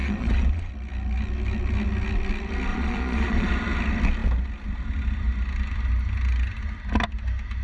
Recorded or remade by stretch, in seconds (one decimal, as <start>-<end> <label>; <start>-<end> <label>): 0.0-0.7 remade; 0.7-2.7 recorded; 2.7-3.5 remade; 3.5-7.6 recorded